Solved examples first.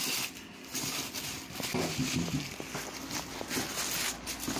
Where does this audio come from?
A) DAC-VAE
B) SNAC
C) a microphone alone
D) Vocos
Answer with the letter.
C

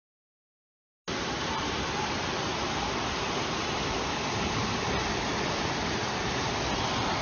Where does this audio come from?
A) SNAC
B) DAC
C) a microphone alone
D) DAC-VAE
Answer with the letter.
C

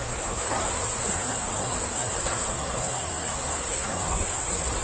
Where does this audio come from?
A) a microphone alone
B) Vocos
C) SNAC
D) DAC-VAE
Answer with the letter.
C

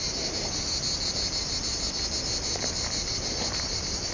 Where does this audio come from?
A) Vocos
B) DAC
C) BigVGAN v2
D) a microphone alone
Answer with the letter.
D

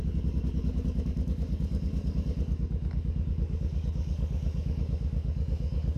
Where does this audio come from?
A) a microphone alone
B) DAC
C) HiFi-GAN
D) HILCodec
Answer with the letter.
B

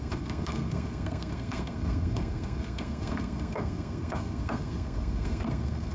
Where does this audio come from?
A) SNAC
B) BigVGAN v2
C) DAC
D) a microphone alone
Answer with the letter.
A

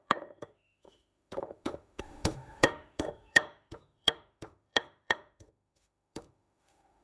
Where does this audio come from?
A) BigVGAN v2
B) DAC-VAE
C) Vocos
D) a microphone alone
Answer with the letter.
B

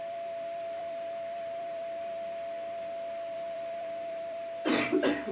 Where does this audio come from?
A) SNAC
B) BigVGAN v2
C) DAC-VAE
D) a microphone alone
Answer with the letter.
B